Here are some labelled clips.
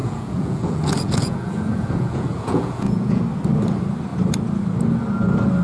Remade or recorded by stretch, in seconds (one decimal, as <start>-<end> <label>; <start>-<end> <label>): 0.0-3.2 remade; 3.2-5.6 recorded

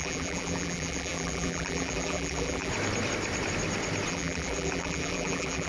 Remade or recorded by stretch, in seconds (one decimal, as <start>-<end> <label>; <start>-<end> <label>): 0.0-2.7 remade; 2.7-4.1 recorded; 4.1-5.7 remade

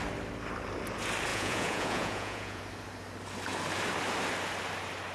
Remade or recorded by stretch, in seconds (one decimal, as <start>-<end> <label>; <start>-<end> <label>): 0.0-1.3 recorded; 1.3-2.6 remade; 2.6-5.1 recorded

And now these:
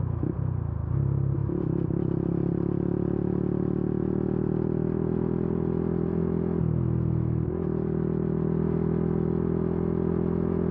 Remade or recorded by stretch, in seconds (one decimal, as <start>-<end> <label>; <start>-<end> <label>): 0.0-10.7 recorded

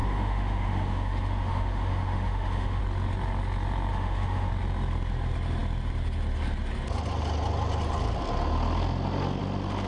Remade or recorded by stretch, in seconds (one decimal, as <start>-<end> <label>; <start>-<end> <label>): 0.0-2.8 remade; 2.8-3.9 recorded; 3.9-4.5 remade; 4.5-9.9 recorded